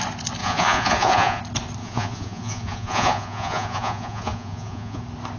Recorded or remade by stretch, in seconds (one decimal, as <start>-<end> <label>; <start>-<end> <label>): 0.0-0.4 recorded; 0.4-1.4 remade; 1.4-1.8 recorded; 1.8-5.0 remade; 5.0-5.4 recorded